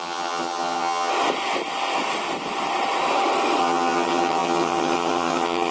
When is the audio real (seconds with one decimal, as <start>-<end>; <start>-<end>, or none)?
1.1-3.6